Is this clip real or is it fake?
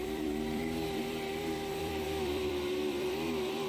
fake